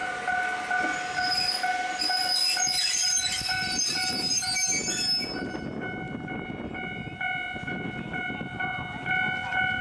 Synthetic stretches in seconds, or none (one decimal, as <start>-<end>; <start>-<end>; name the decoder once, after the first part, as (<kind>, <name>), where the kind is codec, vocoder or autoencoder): none